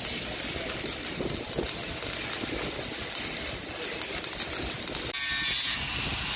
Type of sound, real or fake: real